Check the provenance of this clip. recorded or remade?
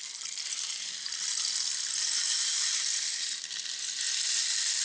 recorded